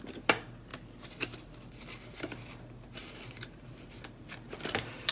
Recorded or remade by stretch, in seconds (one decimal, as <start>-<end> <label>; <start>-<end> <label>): 0.0-5.1 recorded